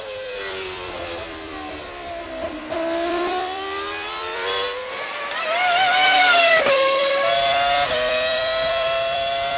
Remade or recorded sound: remade